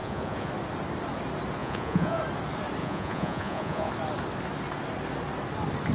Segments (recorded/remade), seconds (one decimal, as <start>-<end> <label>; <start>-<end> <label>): 0.0-0.5 remade; 0.5-1.6 recorded; 1.6-2.2 remade; 2.2-2.8 recorded; 2.8-3.9 remade; 3.9-5.9 recorded